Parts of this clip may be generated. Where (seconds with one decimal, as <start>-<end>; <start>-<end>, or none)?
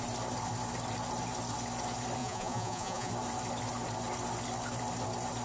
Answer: 2.2-3.1